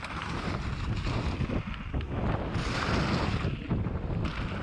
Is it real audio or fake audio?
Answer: real